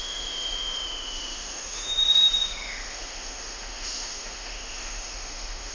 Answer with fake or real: fake